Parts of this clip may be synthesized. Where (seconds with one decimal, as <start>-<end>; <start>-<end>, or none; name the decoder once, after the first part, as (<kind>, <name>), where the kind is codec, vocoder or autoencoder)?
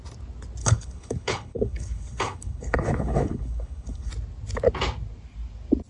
0.6-4.1 (codec, HILCodec)